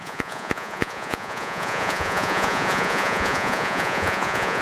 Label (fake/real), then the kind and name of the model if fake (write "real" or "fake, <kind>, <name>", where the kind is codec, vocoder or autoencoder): fake, vocoder, Vocos